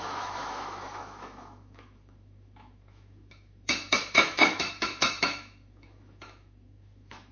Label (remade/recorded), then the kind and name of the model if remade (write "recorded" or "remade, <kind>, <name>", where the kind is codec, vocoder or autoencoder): remade, autoencoder, DAC-VAE